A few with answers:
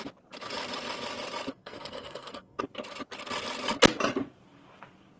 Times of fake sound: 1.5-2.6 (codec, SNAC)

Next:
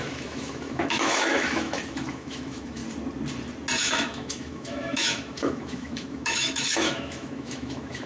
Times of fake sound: 0.0-2.8 (autoencoder, DAC-VAE); 3.8-8.1

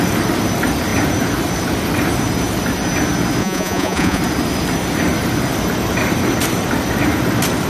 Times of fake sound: 3.4-4.2 (vocoder, Vocos)

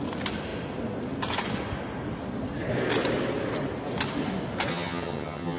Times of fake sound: 4.7-5.6 (vocoder, HiFi-GAN)

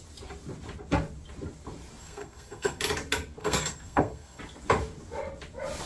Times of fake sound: 2.0-2.8 (codec, SNAC); 3.4-4.4

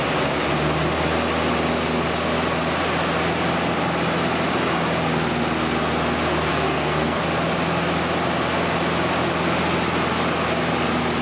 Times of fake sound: 6.5-7.2 (codec, SNAC)

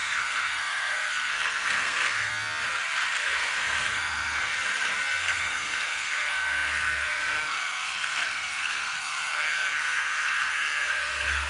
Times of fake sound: 0.0-2.3 (codec, SNAC); 3.1-4.5; 5.2-11.5

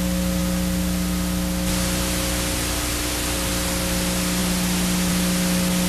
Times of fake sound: none